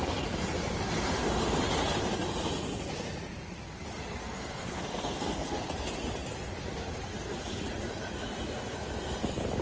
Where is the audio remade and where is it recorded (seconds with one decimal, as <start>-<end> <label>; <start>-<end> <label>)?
0.0-4.2 recorded; 4.2-5.6 remade; 5.6-9.6 recorded